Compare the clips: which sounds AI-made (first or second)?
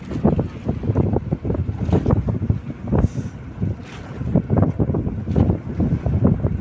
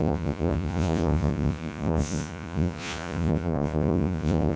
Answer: second